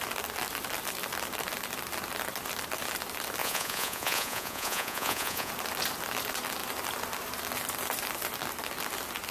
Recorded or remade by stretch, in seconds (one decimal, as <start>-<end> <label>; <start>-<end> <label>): 0.0-3.4 recorded; 3.4-5.5 remade; 5.5-9.3 recorded